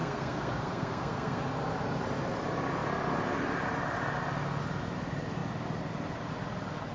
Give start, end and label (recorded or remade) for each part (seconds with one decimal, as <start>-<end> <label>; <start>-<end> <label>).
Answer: 0.0-1.4 remade; 1.4-6.9 recorded